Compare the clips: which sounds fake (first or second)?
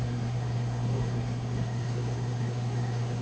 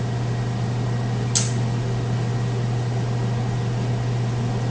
first